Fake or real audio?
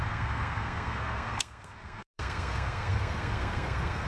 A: fake